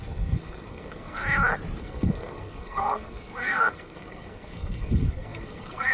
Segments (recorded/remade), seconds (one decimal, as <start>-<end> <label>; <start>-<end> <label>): 0.0-1.2 remade; 1.2-1.8 recorded; 1.8-5.9 remade